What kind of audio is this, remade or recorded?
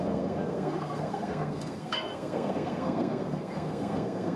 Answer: remade